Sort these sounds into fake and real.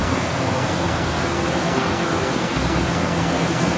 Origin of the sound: fake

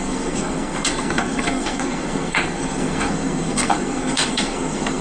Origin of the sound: fake